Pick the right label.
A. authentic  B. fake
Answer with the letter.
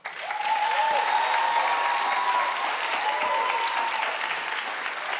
A